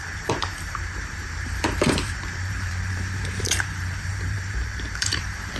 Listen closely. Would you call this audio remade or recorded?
remade